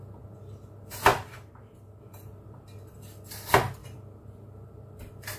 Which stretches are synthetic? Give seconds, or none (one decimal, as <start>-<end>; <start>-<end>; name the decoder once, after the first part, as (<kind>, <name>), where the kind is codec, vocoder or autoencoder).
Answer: none